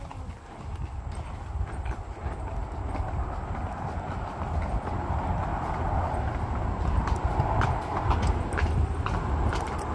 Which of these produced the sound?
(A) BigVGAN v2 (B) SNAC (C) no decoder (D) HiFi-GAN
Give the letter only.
C